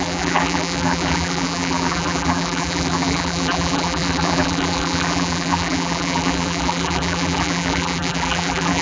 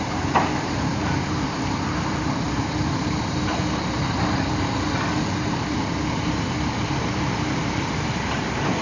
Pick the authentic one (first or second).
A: second